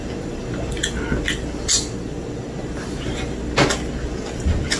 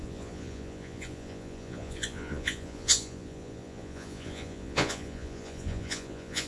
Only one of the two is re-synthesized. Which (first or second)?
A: second